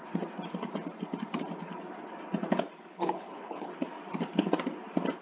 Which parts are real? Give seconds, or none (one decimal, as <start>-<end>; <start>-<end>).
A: 0.0-2.9; 3.7-5.2